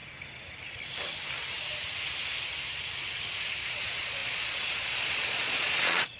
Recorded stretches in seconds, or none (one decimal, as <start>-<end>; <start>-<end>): 0.0-3.7